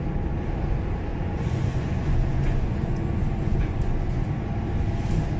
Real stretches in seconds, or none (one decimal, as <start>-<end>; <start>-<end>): 0.0-1.1; 4.3-5.4